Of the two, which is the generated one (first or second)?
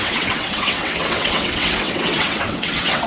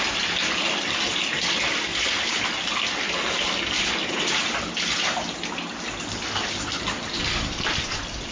first